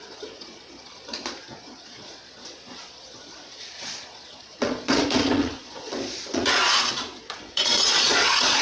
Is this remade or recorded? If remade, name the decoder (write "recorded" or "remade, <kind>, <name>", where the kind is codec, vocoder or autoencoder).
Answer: remade, vocoder, Vocos